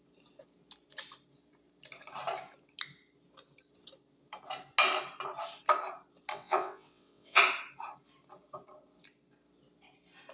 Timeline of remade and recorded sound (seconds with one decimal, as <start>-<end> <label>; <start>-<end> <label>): 0.0-6.3 recorded; 6.3-7.4 remade; 7.4-10.3 recorded